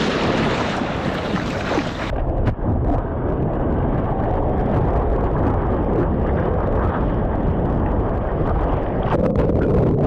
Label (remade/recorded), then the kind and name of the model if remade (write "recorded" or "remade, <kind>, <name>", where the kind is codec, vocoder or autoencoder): recorded